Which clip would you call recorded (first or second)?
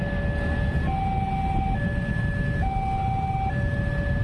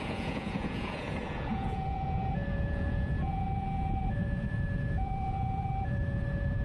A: first